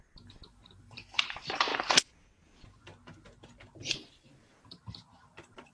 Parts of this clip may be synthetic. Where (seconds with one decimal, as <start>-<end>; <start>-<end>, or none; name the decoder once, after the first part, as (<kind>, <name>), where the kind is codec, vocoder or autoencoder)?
0.0-1.7 (vocoder, BigVGAN v2); 3.9-5.7